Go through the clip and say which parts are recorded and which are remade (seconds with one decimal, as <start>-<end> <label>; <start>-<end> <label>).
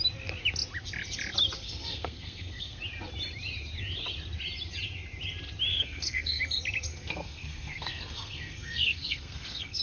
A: 0.0-1.6 recorded; 1.6-2.8 remade; 2.8-5.7 recorded; 5.7-6.4 remade; 6.4-6.9 recorded; 6.9-9.8 remade